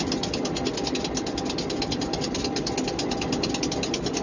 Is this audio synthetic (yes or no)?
no